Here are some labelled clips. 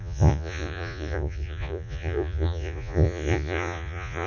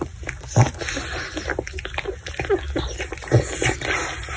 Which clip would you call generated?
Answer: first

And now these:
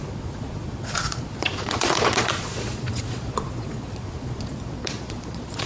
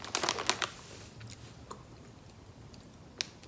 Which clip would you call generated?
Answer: first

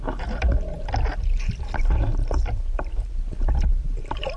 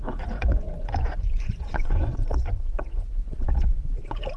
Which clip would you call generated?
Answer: second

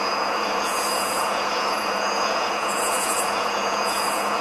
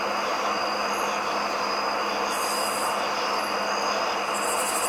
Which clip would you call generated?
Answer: first